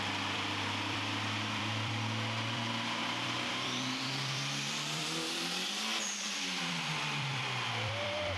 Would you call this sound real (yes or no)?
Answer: no